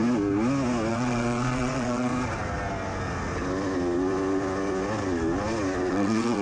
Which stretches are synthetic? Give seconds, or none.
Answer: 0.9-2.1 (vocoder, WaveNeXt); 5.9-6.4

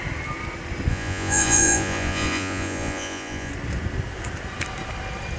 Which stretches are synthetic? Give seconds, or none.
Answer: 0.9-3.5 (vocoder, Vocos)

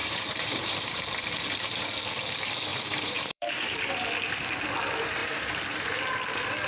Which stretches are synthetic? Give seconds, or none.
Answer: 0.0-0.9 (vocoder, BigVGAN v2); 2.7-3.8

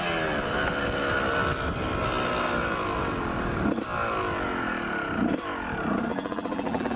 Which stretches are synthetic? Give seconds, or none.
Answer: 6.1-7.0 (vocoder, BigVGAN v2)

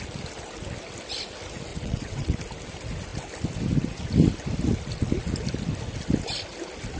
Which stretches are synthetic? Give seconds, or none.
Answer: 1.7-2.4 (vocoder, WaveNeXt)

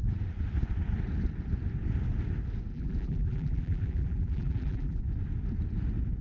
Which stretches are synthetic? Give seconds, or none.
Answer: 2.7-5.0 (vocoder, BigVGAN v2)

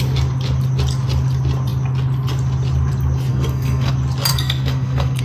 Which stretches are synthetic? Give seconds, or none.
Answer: 3.3-3.9 (codec, SNAC); 4.3-5.2